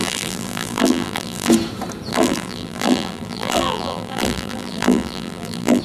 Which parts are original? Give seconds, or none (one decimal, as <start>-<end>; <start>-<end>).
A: 1.5-2.1